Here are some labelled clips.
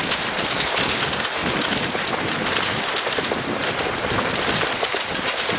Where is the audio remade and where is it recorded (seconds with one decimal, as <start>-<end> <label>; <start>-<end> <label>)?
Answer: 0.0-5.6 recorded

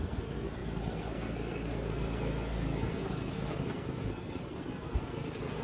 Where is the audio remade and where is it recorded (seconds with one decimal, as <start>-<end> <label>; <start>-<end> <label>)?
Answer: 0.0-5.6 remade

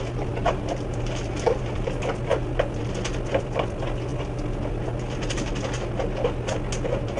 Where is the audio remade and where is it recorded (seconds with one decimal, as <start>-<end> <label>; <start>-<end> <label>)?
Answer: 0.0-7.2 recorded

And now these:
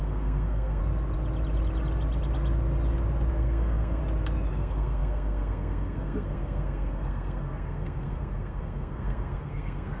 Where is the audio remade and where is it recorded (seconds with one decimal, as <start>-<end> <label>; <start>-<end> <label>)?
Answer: 0.0-0.8 remade; 0.8-3.3 recorded; 3.3-4.0 remade; 4.0-4.5 recorded; 4.5-10.0 remade

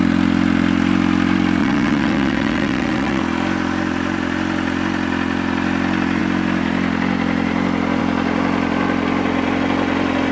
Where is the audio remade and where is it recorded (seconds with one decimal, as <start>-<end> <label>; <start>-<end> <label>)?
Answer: 0.0-1.6 recorded; 1.6-3.2 remade; 3.2-10.3 recorded

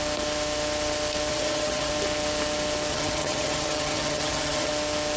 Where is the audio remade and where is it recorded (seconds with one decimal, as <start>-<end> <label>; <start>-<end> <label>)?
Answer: 0.0-1.3 recorded; 1.3-1.9 remade; 1.9-2.9 recorded; 2.9-4.7 remade; 4.7-5.2 recorded

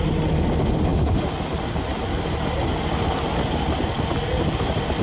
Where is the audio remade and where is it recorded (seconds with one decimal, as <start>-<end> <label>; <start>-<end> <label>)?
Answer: 0.0-5.0 recorded